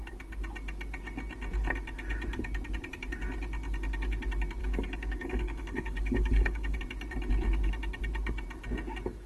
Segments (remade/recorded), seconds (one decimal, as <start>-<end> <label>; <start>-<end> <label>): 0.0-4.6 recorded; 4.6-6.8 remade; 6.8-9.3 recorded